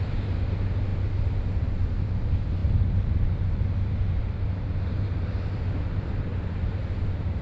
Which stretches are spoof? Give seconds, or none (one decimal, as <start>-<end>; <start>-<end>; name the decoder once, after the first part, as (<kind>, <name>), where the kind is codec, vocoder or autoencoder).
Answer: 0.0-0.9 (vocoder, BigVGAN v2); 1.6-7.4